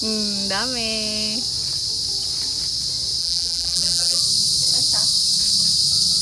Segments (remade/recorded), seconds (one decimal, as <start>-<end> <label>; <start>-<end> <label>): 0.0-3.2 recorded; 3.2-4.2 remade; 4.2-6.2 recorded